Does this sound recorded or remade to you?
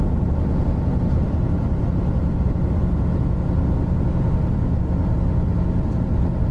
recorded